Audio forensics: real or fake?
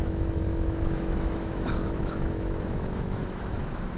fake